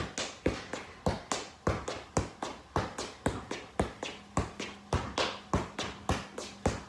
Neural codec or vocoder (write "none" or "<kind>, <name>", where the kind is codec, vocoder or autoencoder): none